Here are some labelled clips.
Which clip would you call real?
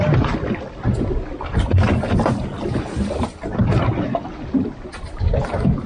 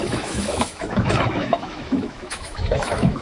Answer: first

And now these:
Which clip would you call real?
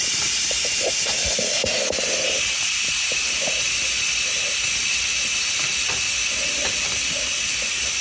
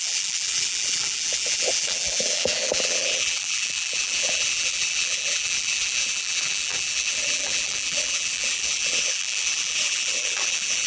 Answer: first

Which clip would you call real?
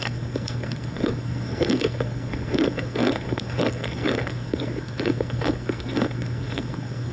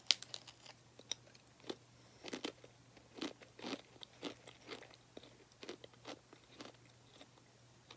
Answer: second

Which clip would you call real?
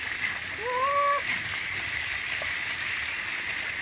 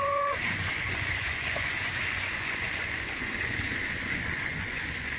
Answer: first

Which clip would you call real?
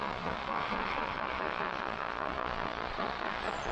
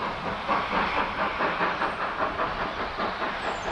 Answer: second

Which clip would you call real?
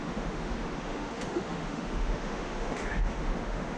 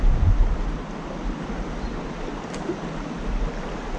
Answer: second